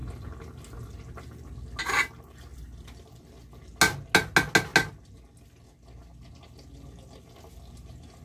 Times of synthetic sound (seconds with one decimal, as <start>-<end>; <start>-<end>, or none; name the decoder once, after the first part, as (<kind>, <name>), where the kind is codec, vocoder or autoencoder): 2.5-3.2 (vocoder, BigVGAN v2)